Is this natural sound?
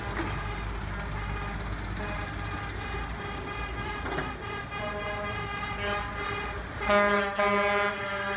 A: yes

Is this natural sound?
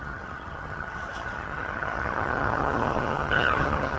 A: no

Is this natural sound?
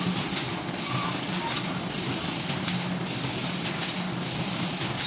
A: yes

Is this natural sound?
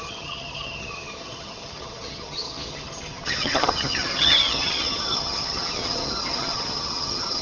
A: no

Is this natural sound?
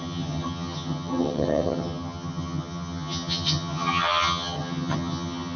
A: no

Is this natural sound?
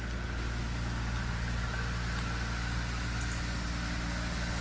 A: yes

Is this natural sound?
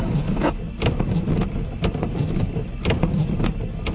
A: yes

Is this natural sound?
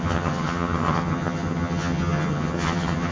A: no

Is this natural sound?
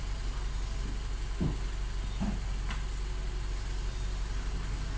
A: yes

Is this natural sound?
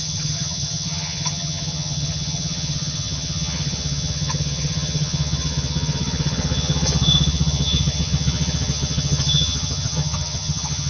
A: no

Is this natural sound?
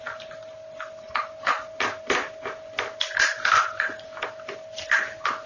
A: yes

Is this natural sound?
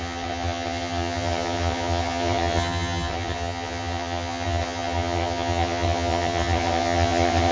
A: no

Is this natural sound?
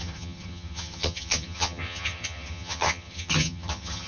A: no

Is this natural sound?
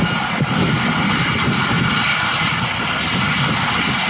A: yes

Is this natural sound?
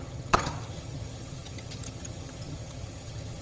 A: no